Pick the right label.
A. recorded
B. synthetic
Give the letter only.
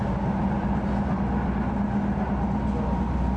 A